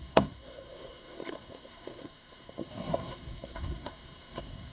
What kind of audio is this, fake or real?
fake